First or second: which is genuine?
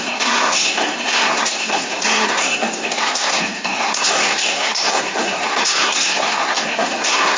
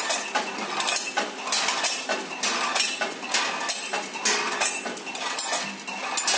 second